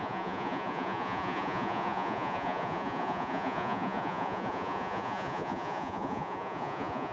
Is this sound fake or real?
fake